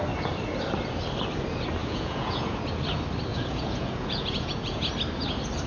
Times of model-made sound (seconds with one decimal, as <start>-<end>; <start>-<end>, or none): 1.8-2.6; 3.3-4.9